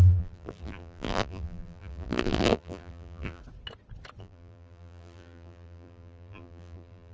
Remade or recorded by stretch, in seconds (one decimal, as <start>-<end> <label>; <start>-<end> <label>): 0.0-3.4 remade; 3.4-4.2 recorded; 4.2-7.1 remade